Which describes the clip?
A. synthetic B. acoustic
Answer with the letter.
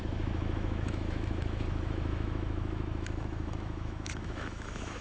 A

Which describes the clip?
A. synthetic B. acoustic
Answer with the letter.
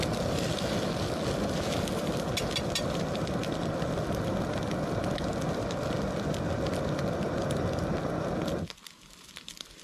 B